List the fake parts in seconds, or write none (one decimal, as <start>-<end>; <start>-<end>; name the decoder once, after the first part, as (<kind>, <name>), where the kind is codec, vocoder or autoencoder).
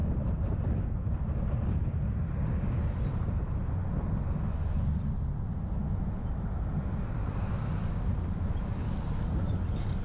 none